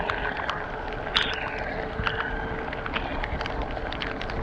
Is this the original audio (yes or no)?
yes